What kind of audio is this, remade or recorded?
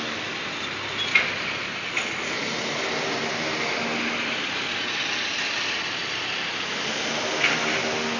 recorded